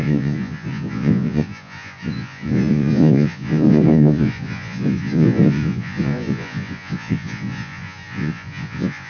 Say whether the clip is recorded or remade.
remade